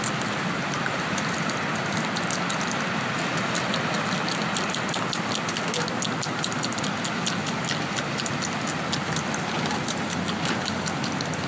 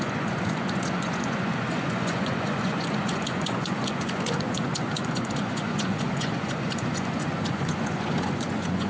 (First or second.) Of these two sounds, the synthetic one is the second